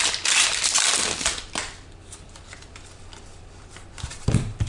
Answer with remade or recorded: recorded